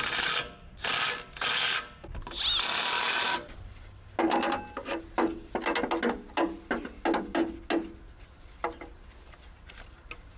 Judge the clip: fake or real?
real